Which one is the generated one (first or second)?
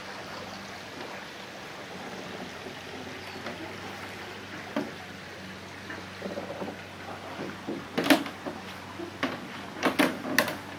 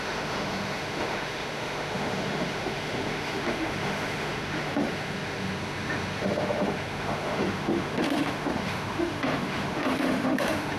second